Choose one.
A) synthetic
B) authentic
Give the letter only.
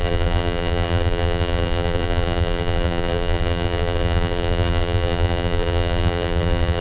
A